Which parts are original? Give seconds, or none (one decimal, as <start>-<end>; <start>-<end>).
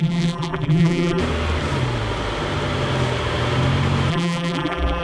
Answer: 1.2-4.1